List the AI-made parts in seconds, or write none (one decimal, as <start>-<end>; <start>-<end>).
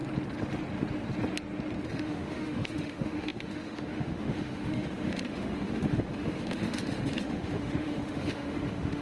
1.9-9.0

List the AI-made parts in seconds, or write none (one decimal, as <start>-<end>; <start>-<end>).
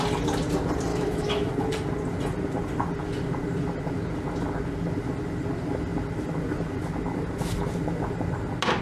0.9-1.5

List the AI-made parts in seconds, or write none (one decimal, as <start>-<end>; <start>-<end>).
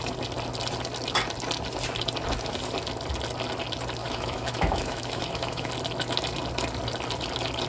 4.0-5.7